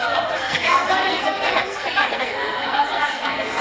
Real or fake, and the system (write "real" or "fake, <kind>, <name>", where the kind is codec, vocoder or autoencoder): fake, codec, SNAC